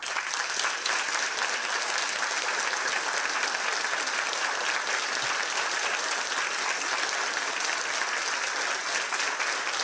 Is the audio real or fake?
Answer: real